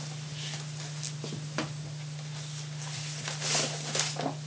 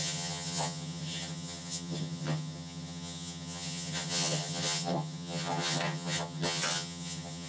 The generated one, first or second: second